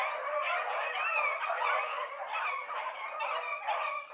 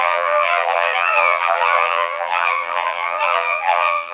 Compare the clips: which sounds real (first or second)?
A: first